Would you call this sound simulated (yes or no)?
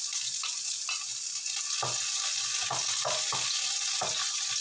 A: no